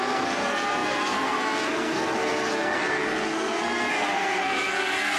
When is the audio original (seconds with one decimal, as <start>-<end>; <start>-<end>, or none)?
none